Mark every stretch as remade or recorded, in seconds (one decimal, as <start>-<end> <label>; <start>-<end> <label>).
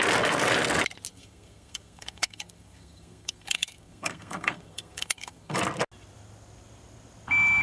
0.0-1.1 recorded; 1.1-5.6 remade; 5.6-7.6 recorded